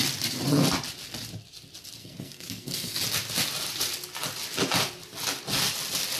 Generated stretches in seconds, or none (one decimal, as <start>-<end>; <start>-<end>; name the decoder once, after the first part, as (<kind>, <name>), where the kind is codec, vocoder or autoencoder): 2.0-3.0 (codec, SNAC)